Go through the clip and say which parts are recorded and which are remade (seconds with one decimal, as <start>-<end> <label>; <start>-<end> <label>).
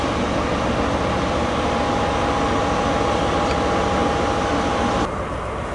0.0-5.7 recorded